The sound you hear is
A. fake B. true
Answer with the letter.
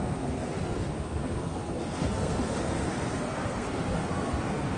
A